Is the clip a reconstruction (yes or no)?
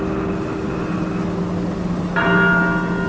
no